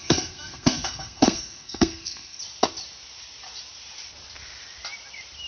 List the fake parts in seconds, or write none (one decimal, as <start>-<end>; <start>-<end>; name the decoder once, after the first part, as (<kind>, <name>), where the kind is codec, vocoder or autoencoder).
0.0-2.4 (codec, SNAC)